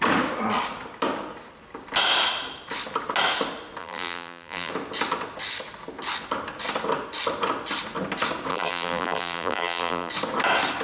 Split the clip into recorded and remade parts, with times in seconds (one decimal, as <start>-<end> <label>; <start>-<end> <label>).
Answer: 0.0-3.8 recorded; 3.8-4.7 remade; 4.7-8.5 recorded; 8.5-10.1 remade; 10.1-10.8 recorded